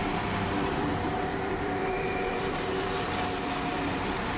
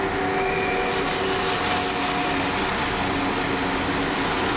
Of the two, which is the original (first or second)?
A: second